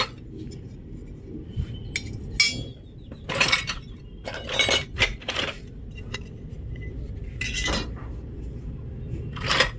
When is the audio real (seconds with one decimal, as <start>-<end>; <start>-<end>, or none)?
0.0-9.8